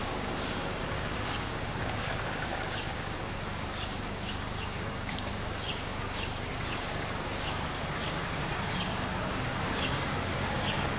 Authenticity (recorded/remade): remade